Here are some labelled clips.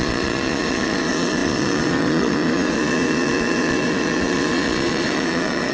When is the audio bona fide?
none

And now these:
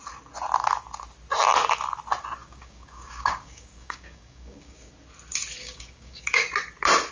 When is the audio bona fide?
0.0-2.4; 4.9-5.6; 6.5-7.1

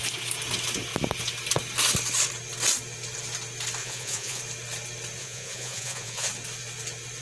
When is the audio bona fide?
0.0-3.8; 4.4-5.2; 6.3-7.2